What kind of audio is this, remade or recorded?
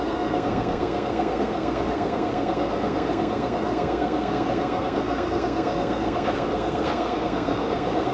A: remade